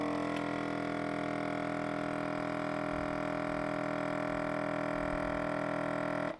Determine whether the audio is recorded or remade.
recorded